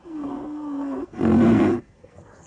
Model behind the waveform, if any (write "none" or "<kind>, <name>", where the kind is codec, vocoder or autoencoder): codec, SNAC